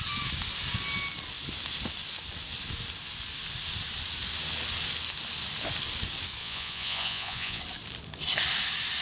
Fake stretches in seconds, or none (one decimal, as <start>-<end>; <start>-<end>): 6.4-7.6